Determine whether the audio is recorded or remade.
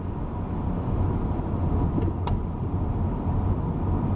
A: recorded